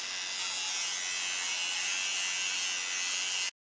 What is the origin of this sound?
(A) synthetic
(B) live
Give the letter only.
B